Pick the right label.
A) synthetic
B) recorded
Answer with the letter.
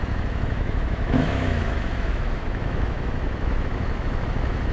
A